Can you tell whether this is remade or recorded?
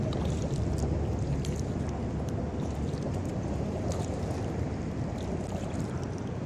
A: recorded